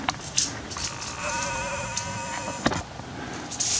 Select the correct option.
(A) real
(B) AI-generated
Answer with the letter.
A